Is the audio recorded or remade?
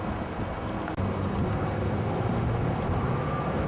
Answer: recorded